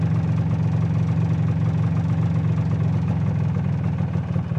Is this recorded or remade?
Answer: recorded